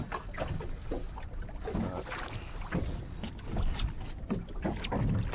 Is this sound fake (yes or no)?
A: no